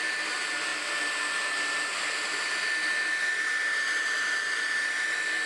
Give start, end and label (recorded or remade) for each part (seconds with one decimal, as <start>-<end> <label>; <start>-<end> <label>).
0.0-5.5 recorded